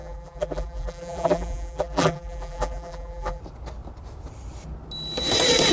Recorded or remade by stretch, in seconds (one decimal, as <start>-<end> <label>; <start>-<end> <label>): 0.0-3.4 remade; 3.4-5.7 recorded